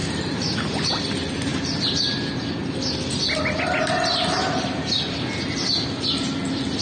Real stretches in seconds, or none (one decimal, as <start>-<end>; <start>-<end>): 0.0-1.5; 3.6-6.8